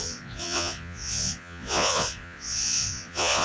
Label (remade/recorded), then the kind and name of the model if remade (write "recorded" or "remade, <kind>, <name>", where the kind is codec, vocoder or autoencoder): remade, vocoder, Vocos